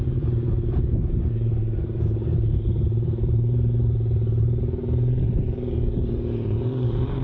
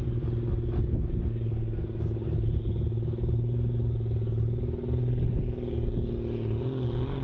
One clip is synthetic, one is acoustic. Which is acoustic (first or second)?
second